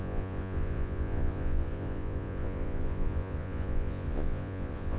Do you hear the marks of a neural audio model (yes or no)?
yes